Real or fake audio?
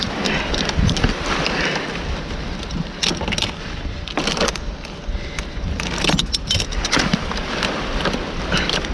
real